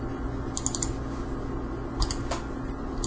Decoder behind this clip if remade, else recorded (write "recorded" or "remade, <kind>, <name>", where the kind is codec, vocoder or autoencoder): recorded